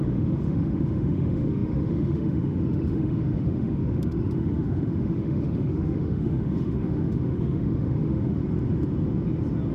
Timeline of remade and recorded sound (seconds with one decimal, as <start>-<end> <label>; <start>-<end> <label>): 0.0-8.4 remade; 8.4-9.7 recorded